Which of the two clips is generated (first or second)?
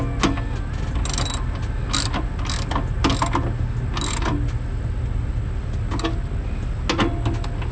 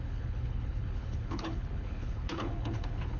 second